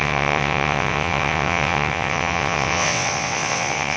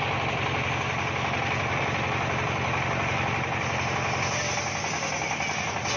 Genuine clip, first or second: second